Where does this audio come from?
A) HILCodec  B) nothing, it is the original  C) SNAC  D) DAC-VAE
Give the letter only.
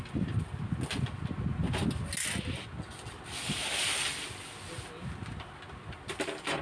B